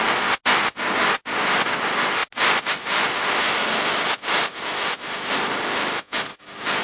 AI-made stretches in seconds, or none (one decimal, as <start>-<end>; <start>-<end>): none

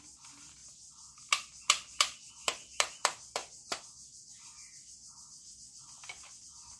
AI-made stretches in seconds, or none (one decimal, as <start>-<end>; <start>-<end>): none

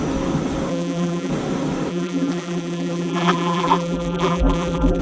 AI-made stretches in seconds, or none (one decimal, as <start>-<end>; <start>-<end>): 0.7-1.3; 1.9-5.0

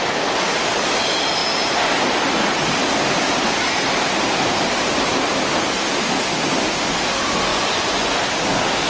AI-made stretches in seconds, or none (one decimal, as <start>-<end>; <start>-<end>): 7.5-8.2

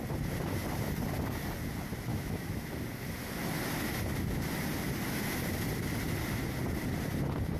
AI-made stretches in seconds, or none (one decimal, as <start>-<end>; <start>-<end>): 2.1-2.7